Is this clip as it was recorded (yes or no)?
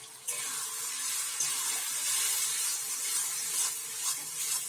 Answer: yes